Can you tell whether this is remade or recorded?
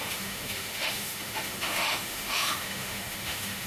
remade